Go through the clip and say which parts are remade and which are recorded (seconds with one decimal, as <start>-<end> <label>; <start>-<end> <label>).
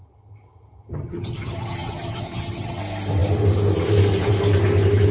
0.0-2.8 remade; 2.8-5.1 recorded